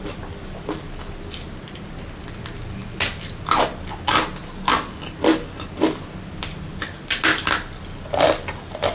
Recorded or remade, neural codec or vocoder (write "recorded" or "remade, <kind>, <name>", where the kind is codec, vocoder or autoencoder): recorded